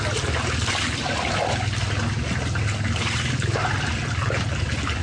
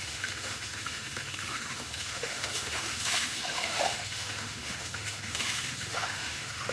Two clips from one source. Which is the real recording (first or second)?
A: first